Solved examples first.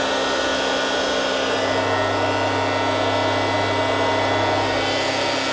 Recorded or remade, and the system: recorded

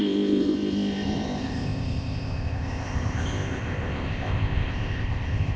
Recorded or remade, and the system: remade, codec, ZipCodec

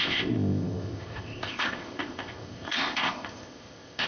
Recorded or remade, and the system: remade, codec, ZipCodec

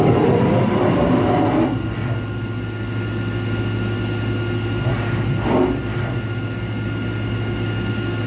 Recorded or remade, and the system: recorded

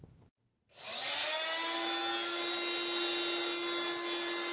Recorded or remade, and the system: recorded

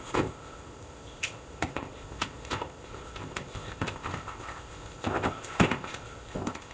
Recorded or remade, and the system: remade, codec, ZipCodec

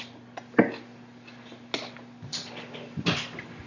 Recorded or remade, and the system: recorded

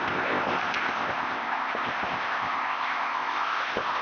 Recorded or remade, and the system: remade, codec, ZipCodec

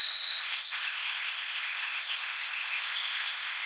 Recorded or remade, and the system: remade, codec, ZipCodec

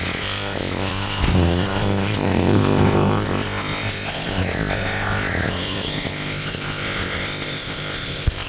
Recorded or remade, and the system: remade, codec, ZipCodec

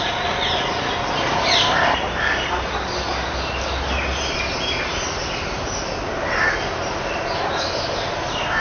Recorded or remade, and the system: recorded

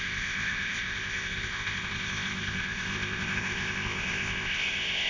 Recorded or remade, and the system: remade, codec, ZipCodec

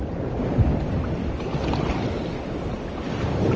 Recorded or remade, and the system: recorded